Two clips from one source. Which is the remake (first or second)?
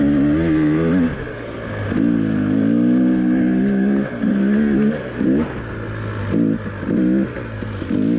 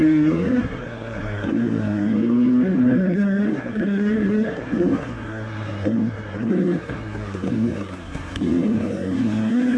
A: second